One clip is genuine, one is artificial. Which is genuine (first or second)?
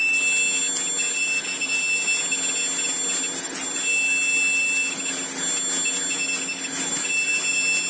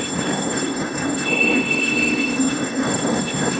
first